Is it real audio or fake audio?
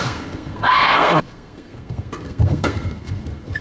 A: fake